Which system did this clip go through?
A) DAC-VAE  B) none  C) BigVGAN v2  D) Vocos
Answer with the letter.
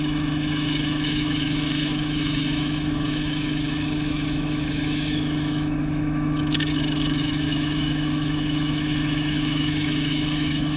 A